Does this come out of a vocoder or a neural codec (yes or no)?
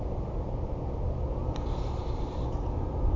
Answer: no